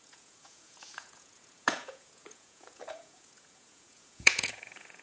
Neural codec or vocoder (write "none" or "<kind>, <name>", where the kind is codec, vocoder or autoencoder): vocoder, Vocos